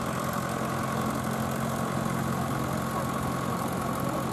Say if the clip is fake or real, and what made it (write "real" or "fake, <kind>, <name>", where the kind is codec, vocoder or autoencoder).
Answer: real